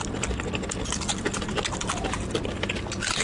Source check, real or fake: real